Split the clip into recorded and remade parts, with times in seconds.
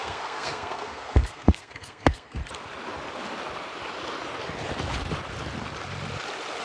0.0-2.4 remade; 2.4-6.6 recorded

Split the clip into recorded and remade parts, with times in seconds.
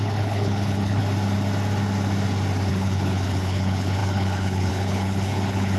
0.0-1.0 remade; 1.0-2.7 recorded; 2.7-5.8 remade